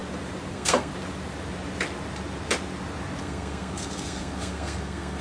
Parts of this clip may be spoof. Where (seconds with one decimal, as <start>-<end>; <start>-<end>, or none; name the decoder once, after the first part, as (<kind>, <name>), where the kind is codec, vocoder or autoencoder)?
0.5-0.9 (codec, SNAC); 3.2-5.2